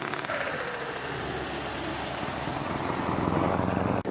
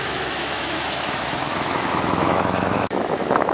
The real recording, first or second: first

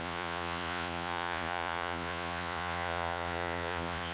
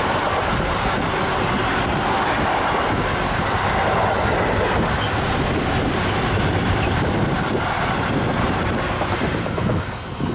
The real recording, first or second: second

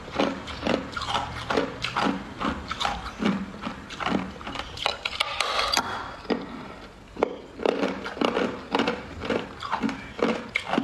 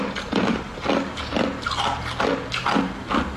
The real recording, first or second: second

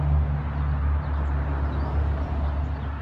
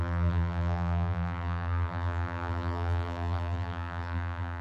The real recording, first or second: first